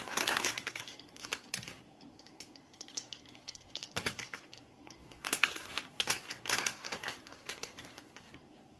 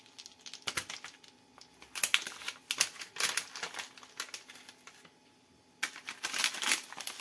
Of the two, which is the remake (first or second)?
first